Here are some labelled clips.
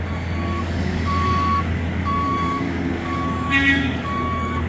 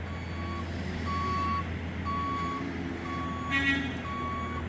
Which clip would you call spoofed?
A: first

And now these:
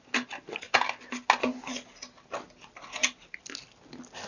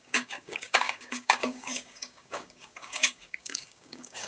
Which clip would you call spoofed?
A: second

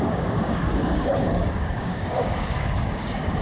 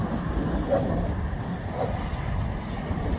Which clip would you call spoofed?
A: first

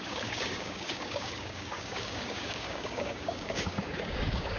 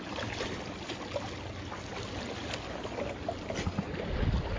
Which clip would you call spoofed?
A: first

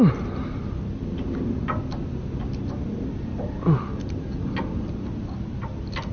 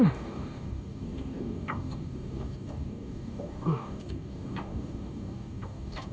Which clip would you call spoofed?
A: second